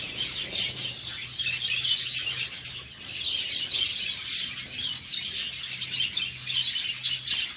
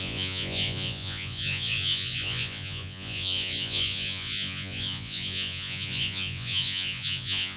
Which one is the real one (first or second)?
first